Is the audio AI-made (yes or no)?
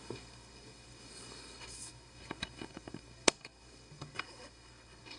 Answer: yes